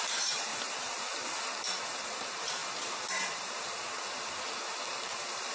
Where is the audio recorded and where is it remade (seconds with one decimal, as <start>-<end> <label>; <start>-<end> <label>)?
0.0-0.5 remade; 0.5-1.8 recorded; 1.8-3.8 remade; 3.8-4.9 recorded; 4.9-5.5 remade